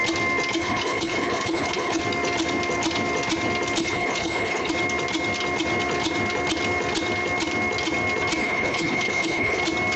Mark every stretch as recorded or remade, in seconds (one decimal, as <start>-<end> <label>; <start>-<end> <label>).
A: 0.0-0.6 recorded; 0.6-2.0 remade; 2.0-3.8 recorded; 3.8-4.7 remade; 4.7-8.4 recorded; 8.4-9.6 remade; 9.6-10.0 recorded